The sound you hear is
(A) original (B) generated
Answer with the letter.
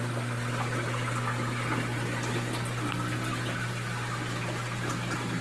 A